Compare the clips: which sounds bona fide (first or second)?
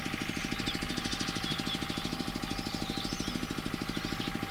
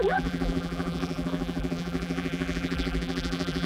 first